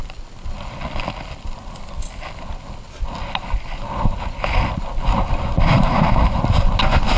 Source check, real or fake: real